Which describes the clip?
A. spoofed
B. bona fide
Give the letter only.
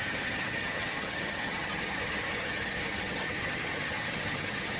A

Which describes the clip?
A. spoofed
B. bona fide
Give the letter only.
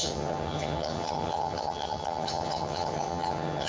A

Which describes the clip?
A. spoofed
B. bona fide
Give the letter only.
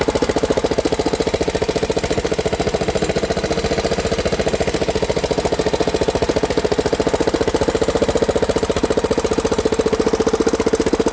B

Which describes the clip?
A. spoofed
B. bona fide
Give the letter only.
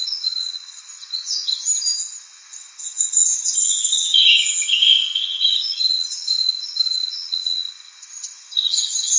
A